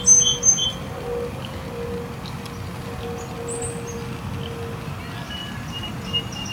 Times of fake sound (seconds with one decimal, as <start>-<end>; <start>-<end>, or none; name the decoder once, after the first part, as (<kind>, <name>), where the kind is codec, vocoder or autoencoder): 5.4-6.5 (vocoder, BigVGAN v2)

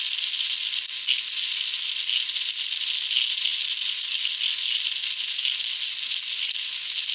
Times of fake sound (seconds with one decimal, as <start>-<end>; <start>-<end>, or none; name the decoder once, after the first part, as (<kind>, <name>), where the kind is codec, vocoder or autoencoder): none

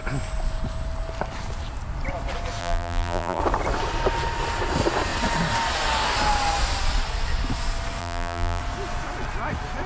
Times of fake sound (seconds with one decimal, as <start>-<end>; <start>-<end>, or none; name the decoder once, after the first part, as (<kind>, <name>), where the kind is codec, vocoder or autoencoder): 2.6-3.4 (vocoder, BigVGAN v2); 8.0-8.6

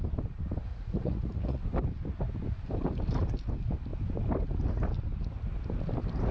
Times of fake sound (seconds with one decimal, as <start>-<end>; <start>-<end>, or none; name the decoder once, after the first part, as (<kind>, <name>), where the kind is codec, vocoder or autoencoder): 0.7-1.6 (vocoder, Vocos)